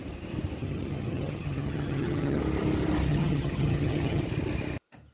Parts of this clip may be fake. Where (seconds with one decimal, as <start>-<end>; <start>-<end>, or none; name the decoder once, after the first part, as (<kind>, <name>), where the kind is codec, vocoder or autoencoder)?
0.6-2.4 (vocoder, HiFi-GAN); 3.1-4.2